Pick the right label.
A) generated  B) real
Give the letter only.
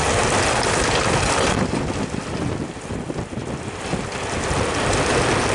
B